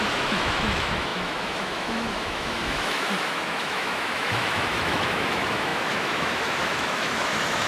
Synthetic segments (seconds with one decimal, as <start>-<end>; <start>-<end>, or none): 0.0-7.7